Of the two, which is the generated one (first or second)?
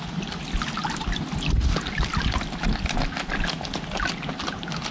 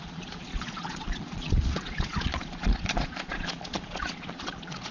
second